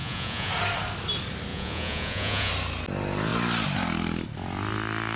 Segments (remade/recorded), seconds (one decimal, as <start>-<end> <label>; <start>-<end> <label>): 0.0-0.5 remade; 0.5-1.5 recorded; 1.5-2.5 remade; 2.5-5.2 recorded